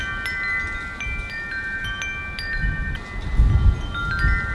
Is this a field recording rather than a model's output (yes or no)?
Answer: yes